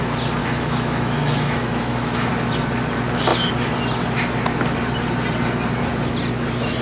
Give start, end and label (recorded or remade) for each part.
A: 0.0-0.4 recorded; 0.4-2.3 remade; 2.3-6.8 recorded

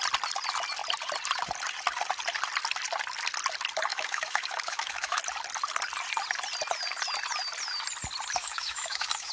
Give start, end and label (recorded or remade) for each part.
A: 0.0-3.9 recorded; 3.9-5.2 remade; 5.2-8.4 recorded; 8.4-9.3 remade

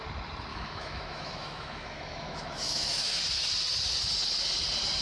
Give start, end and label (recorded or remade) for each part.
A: 0.0-0.5 recorded; 0.5-3.2 remade; 3.2-5.0 recorded

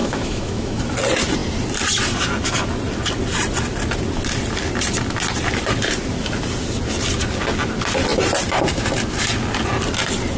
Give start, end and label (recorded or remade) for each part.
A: 0.0-0.8 remade; 0.8-10.4 recorded

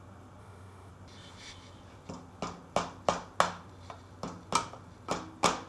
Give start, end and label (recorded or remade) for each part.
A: 0.0-0.4 recorded; 0.4-0.9 remade; 0.9-5.7 recorded

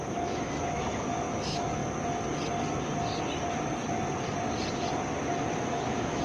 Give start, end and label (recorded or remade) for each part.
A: 0.0-1.8 remade; 1.8-5.5 recorded; 5.5-6.2 remade